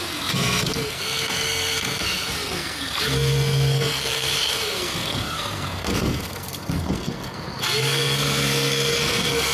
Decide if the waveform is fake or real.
fake